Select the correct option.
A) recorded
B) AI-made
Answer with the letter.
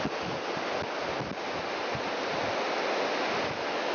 A